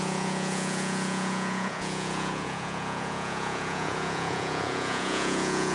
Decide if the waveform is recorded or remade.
remade